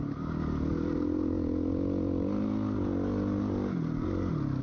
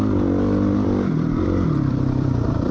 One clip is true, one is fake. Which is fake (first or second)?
second